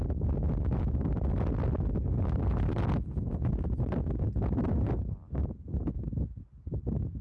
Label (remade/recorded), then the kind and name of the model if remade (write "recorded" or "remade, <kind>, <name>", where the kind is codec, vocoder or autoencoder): recorded